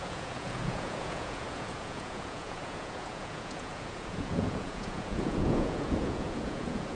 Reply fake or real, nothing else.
fake